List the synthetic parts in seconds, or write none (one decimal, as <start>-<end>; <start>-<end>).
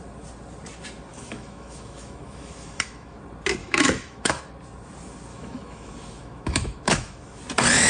1.1-3.2; 3.6-4.4; 5.3-7.4